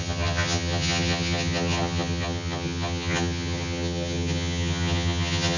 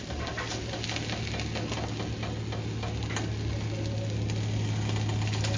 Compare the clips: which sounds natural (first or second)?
second